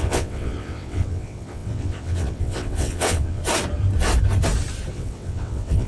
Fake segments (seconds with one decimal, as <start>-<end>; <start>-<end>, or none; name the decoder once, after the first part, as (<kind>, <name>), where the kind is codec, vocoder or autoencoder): 0.0-3.4 (vocoder, WaveNeXt); 4.9-5.9